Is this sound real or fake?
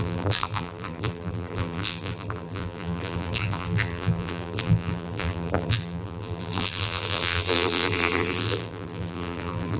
fake